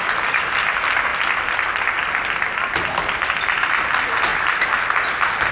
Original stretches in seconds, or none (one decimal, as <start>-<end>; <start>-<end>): 0.0-5.5